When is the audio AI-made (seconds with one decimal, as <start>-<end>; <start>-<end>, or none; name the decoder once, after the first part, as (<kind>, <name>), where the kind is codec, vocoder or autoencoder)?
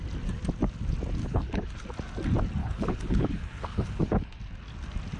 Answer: 1.2-1.7 (codec, HILCodec); 2.6-4.4